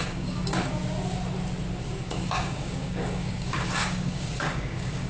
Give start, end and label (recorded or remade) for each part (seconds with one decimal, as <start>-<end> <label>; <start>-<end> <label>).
0.0-0.8 remade; 0.8-1.8 recorded; 1.8-5.1 remade